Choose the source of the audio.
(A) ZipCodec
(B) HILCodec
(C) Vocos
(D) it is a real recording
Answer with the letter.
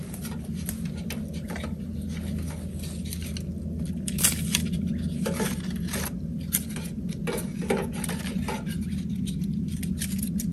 D